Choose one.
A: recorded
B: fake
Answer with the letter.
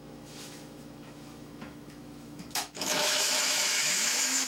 B